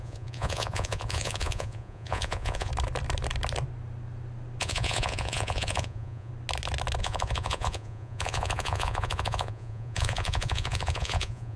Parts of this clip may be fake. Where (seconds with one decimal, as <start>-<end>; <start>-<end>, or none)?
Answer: 0.0-2.7; 4.6-6.3; 7.0-11.6